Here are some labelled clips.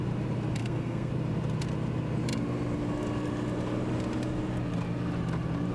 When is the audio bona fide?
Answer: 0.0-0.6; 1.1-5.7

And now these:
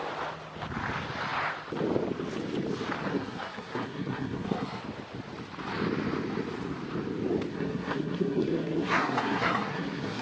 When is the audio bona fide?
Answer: 0.0-3.1; 4.8-7.5

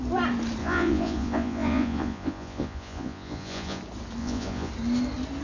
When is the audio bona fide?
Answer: 0.0-0.6; 3.8-4.2; 4.7-5.4

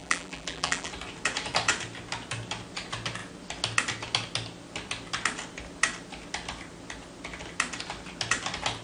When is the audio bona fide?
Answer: 0.9-8.8